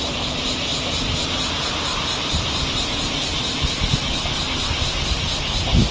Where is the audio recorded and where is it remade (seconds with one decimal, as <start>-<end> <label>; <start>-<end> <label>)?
0.0-5.9 recorded